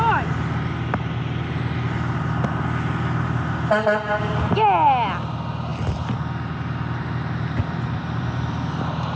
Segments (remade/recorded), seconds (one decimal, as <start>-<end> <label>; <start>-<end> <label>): 0.0-9.2 recorded